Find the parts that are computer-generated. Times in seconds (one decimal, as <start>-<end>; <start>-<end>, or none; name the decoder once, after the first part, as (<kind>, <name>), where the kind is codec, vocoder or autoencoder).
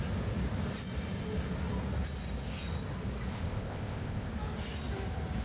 3.3-4.3 (codec, ZipCodec)